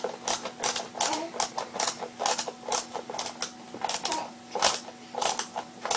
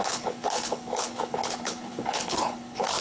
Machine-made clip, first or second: second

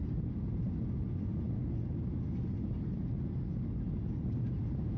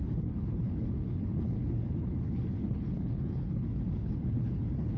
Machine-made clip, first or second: second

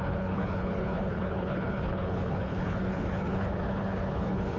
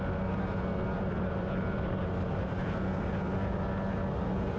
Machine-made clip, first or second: first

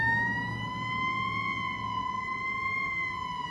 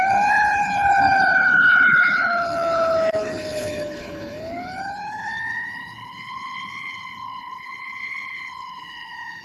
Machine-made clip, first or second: second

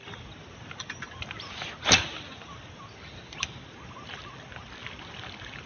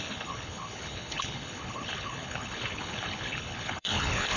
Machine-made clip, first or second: second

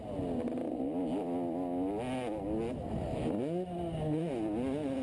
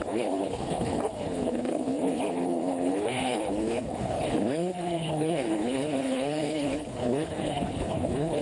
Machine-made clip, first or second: second